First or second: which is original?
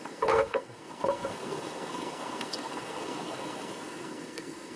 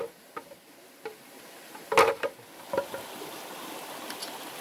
second